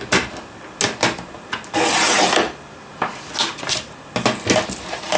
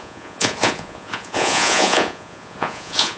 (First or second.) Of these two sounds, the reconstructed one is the second